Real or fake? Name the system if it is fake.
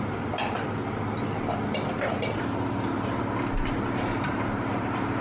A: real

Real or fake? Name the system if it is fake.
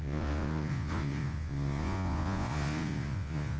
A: fake, vocoder, Vocos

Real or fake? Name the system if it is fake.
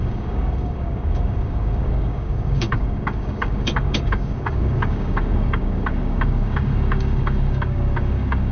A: fake, codec, DAC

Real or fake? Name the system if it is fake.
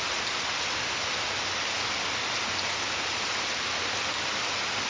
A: real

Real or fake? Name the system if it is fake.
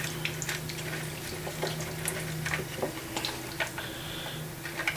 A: real